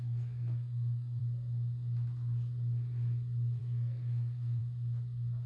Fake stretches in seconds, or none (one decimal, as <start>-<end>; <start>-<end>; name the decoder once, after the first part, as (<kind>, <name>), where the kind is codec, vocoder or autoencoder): 0.0-1.2 (codec, SNAC); 3.6-4.6